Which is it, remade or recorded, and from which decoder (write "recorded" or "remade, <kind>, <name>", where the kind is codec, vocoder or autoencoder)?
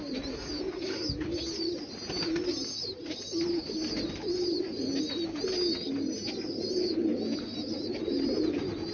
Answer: recorded